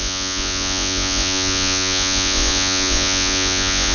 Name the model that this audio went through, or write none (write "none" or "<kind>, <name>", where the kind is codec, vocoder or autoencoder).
vocoder, Vocos